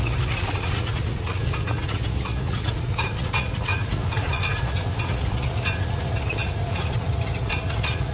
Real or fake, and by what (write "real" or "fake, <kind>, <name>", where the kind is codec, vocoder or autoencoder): fake, vocoder, Vocos